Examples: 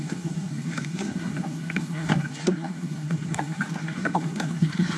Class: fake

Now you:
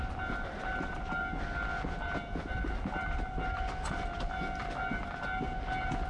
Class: real